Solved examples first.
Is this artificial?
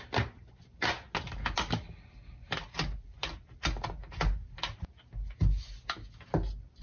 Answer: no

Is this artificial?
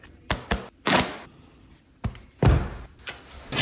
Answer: no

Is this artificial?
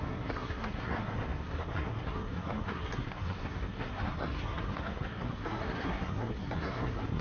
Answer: yes